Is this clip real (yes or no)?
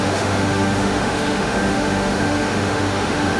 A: no